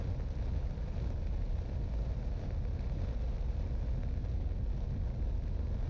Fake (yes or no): no